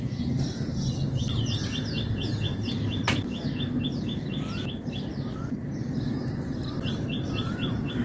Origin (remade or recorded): recorded